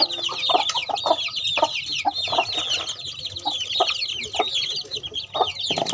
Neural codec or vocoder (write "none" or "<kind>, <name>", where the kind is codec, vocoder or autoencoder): none